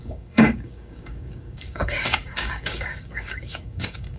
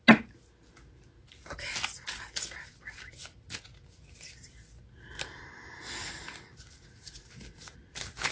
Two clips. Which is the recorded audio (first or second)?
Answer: second